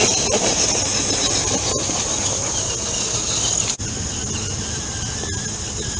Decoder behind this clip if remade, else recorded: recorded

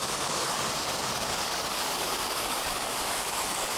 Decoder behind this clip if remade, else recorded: remade, codec, DAC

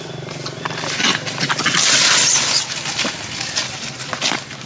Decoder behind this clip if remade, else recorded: recorded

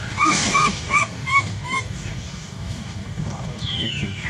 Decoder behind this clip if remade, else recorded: remade, codec, DAC